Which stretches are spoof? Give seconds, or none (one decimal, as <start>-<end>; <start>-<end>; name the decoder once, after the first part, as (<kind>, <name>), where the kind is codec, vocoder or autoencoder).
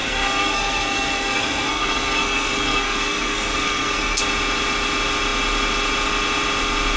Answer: 0.0-4.2 (codec, SNAC)